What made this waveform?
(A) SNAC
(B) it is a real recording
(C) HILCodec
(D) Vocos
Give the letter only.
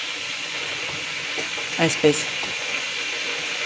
D